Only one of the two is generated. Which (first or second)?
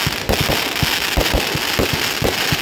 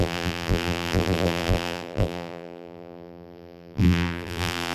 second